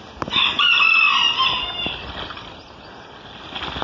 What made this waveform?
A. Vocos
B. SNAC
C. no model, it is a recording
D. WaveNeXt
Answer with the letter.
C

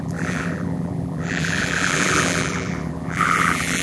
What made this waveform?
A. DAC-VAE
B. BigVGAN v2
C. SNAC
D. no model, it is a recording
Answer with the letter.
B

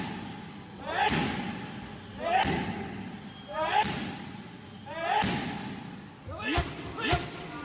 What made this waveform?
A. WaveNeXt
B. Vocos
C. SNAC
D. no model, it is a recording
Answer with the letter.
D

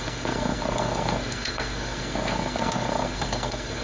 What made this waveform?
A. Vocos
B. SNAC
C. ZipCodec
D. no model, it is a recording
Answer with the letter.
B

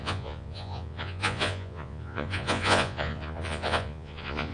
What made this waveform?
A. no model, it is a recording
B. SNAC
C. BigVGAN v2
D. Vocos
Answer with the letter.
D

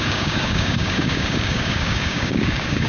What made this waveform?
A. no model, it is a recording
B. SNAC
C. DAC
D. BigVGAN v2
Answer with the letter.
C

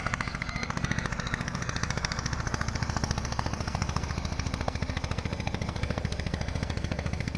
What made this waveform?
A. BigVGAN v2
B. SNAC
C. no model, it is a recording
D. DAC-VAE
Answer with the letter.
B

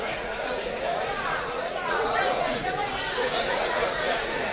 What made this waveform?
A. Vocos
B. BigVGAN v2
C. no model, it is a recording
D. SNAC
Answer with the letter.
A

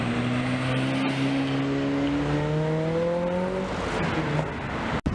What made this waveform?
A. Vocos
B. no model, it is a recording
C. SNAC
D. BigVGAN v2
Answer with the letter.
B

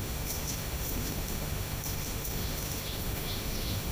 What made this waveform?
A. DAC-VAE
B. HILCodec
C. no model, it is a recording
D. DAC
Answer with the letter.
A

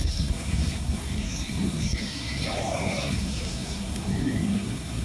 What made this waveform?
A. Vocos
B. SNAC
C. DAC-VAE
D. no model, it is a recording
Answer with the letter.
B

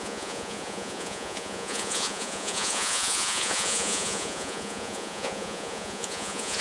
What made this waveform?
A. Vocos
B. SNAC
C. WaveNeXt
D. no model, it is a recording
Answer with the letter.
A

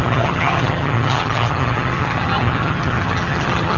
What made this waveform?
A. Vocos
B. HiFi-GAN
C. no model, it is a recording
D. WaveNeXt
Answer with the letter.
B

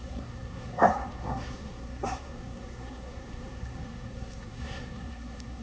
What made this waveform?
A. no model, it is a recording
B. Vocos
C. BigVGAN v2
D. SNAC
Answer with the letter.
D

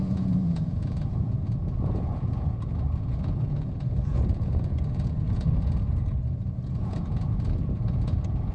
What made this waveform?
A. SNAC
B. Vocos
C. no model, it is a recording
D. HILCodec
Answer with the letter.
B